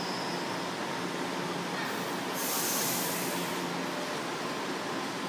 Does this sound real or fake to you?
real